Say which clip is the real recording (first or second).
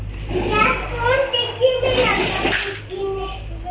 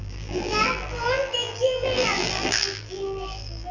first